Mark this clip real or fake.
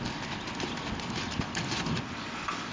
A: real